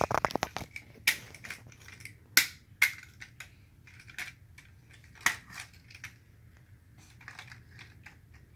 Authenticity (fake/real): real